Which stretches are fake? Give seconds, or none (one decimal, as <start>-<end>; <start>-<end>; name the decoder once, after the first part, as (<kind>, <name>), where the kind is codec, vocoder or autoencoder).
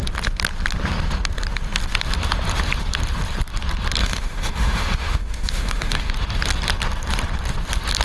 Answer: 4.0-6.1 (autoencoder, DAC-VAE)